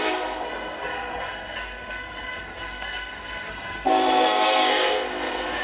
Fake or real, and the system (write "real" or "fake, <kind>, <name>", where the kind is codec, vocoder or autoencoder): fake, codec, SNAC